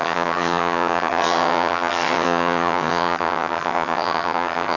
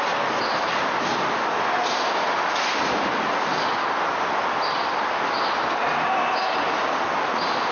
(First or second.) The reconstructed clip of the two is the first